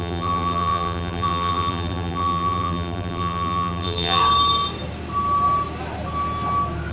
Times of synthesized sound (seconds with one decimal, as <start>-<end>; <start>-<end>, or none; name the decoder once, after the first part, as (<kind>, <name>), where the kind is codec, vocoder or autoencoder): 0.0-4.2 (vocoder, BigVGAN v2)